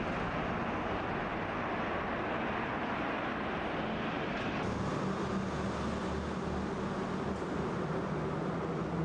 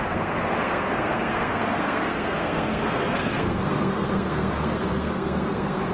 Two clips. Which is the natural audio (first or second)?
first